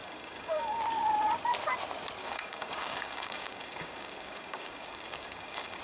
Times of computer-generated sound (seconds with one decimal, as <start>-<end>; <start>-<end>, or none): 0.0-0.8; 2.2-5.8